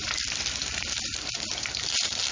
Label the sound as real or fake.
fake